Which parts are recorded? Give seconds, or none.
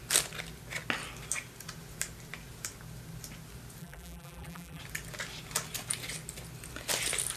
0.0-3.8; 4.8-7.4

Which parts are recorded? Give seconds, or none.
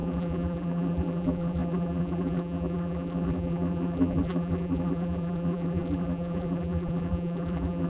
none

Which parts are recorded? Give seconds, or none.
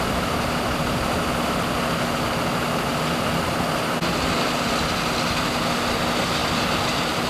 0.0-7.3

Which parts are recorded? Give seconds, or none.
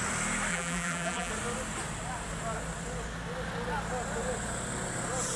0.0-0.5; 1.3-5.4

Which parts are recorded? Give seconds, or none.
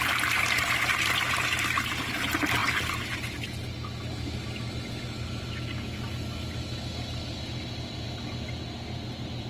0.0-9.5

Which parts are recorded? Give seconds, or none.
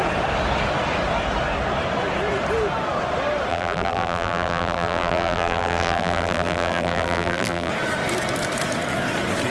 0.0-3.5; 7.7-9.5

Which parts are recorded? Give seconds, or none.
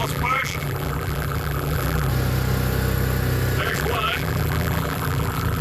2.1-3.6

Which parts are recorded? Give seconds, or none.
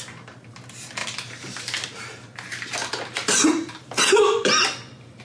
0.0-5.2